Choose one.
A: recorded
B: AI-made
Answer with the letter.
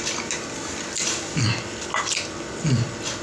A